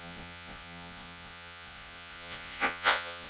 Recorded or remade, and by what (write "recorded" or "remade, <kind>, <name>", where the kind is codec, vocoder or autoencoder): remade, vocoder, Vocos